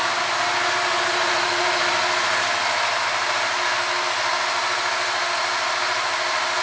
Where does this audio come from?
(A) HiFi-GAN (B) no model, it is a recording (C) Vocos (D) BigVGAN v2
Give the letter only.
B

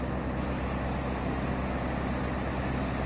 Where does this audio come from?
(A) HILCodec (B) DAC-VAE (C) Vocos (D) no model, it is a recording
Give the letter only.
D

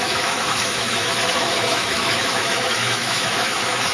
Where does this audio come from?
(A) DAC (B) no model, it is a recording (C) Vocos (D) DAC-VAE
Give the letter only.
D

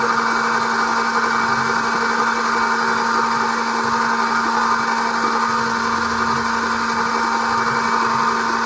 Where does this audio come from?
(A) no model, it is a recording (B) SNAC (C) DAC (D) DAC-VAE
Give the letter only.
A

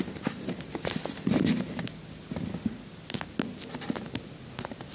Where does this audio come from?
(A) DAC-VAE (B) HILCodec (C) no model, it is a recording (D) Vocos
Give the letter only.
C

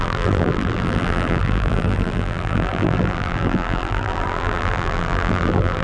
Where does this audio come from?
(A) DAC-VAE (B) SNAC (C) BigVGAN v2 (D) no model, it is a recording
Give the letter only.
C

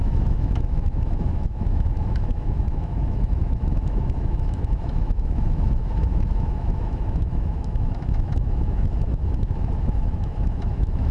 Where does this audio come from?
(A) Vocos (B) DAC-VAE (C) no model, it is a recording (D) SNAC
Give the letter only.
B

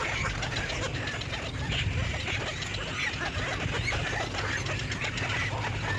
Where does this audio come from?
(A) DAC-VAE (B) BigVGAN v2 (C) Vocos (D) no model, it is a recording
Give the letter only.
D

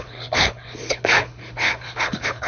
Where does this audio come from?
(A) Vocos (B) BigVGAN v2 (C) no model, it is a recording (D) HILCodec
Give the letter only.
D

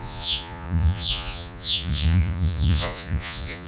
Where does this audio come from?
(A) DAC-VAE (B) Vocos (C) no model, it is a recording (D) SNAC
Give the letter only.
B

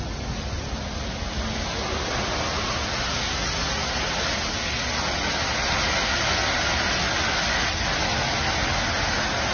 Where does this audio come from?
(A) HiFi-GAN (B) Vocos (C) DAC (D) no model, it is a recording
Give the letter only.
D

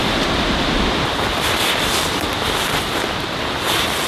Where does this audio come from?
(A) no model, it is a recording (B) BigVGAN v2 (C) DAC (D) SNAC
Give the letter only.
A